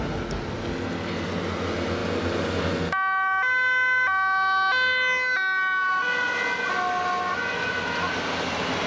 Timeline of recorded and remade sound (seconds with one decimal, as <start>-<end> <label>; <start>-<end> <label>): 0.0-8.9 recorded